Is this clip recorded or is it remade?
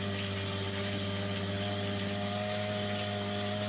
recorded